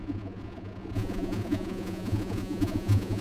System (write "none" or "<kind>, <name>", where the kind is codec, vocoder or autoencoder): vocoder, Vocos